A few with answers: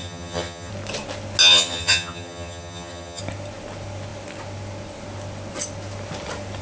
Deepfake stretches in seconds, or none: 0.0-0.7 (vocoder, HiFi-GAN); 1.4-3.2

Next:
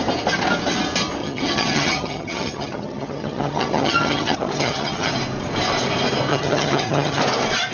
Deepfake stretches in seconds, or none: 1.2-5.1 (vocoder, HiFi-GAN); 6.3-7.2

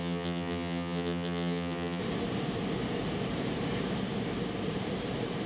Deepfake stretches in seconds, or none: 0.0-2.0 (vocoder, HiFi-GAN)

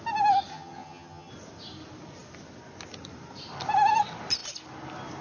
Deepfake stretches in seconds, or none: 0.5-1.3 (vocoder, HiFi-GAN)

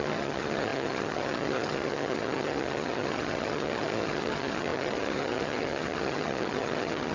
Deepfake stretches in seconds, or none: 0.0-7.1 (vocoder, HiFi-GAN)